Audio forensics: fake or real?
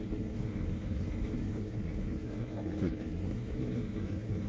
fake